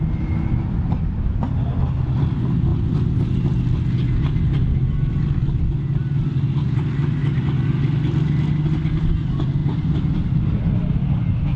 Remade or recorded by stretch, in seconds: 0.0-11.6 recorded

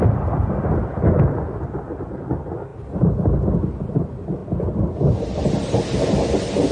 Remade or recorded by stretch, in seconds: 0.0-6.7 recorded